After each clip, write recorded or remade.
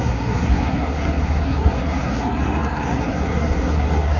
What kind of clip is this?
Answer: remade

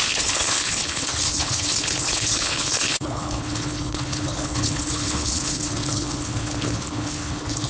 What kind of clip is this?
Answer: remade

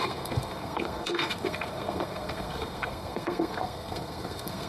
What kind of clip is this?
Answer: remade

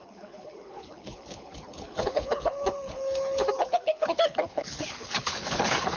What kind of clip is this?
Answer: remade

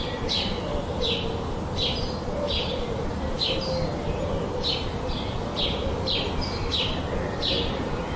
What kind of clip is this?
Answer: recorded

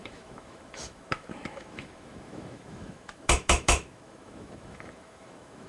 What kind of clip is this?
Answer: remade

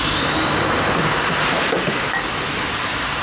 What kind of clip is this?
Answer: recorded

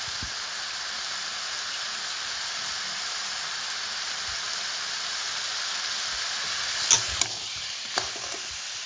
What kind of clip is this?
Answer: recorded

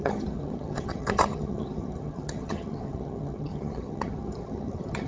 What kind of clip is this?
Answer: remade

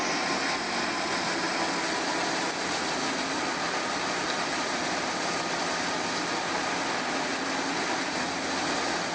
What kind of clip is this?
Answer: recorded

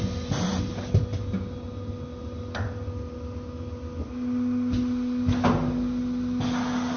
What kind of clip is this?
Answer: recorded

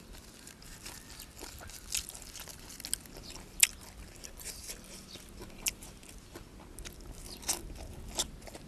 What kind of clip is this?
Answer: recorded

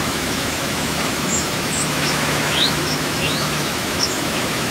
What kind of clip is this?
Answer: remade